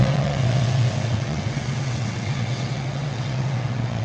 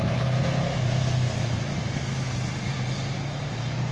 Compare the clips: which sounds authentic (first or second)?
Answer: second